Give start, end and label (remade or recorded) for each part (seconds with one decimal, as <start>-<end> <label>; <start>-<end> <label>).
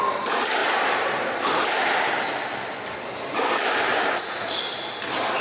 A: 0.0-0.6 recorded; 0.6-1.9 remade; 1.9-3.9 recorded; 3.9-4.5 remade; 4.5-5.4 recorded